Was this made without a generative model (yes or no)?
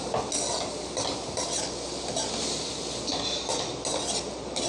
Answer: yes